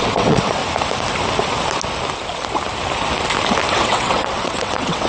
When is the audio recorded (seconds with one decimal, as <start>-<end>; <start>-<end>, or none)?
0.6-3.7